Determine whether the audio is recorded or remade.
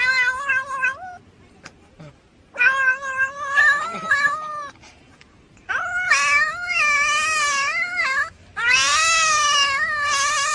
recorded